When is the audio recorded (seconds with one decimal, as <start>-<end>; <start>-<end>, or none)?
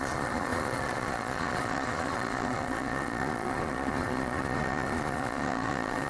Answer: none